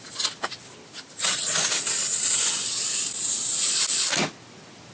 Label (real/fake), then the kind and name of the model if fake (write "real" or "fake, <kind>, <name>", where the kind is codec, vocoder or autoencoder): real